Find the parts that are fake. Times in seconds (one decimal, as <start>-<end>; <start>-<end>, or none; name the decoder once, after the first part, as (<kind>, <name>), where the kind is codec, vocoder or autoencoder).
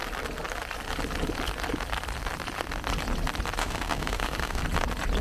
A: 3.6-4.6 (codec, SNAC)